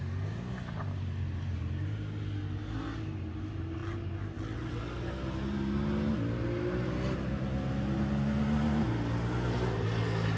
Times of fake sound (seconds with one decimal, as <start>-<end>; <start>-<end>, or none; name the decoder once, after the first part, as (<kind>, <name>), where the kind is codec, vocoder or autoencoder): none